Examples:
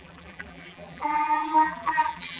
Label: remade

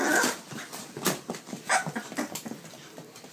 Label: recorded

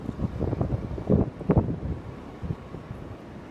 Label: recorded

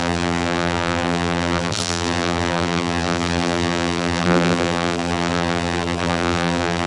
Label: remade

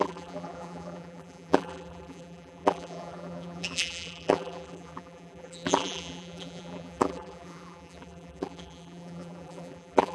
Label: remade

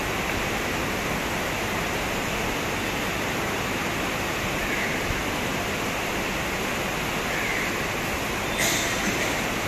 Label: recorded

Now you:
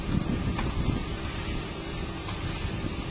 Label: recorded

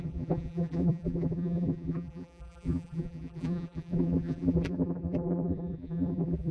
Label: remade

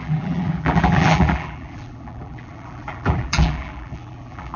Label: remade